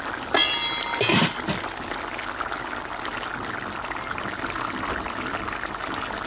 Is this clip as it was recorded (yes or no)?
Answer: yes